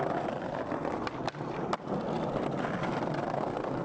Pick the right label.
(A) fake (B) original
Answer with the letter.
B